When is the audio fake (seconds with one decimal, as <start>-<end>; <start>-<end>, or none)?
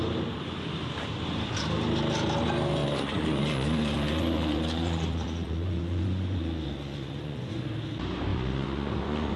2.8-7.7; 8.3-9.4